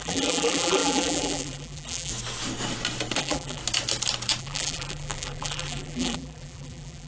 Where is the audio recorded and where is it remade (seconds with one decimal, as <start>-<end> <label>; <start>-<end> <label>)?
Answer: 0.0-2.1 remade; 2.1-3.2 recorded; 3.2-3.6 remade; 3.6-4.4 recorded; 4.4-7.1 remade